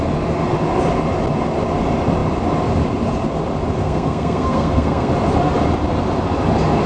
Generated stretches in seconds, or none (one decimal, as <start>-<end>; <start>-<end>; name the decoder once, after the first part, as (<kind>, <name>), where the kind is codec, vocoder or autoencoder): 3.8-5.1 (codec, SNAC)

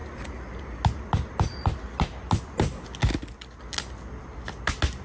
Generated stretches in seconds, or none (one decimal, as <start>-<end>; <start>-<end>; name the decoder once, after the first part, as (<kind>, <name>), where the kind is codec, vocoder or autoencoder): none

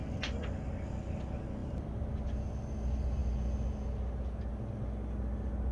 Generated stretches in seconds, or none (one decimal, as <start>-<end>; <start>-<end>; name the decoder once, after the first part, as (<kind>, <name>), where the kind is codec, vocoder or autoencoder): 0.0-0.7 (vocoder, BigVGAN v2); 1.6-2.1

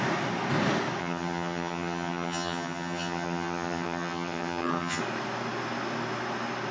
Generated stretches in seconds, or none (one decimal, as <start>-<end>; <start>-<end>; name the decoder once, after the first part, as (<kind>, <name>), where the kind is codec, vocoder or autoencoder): 1.0-5.0 (vocoder, HiFi-GAN)